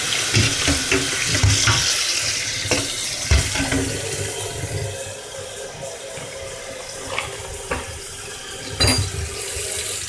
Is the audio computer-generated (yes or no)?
no